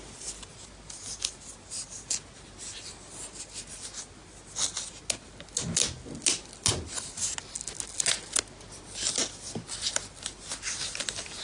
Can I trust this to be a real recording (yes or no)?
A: yes